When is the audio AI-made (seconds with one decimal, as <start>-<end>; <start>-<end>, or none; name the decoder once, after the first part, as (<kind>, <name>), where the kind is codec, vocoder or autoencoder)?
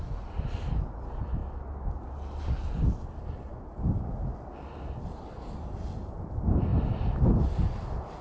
none